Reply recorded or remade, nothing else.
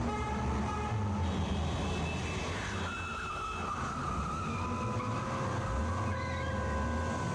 recorded